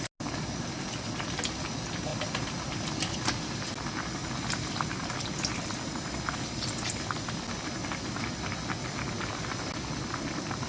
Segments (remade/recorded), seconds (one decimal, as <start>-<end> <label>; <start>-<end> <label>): 0.0-10.7 recorded